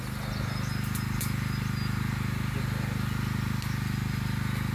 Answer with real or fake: real